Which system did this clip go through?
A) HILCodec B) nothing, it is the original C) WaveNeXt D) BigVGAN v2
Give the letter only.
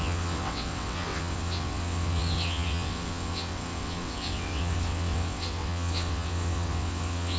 C